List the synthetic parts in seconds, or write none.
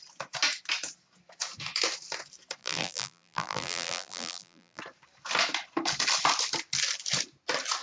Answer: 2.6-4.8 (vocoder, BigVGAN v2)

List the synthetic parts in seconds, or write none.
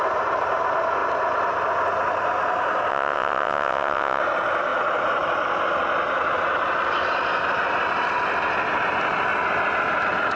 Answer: 2.9-4.2 (vocoder, WaveNeXt)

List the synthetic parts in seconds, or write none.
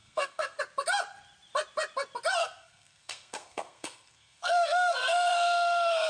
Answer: 0.0-0.6 (codec, SNAC); 2.4-6.1